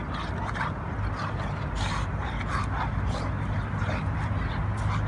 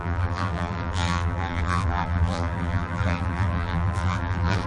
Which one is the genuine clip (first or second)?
first